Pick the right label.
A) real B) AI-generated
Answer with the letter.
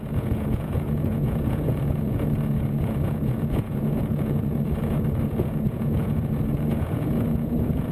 B